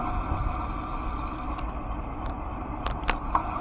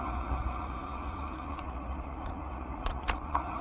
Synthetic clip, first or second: second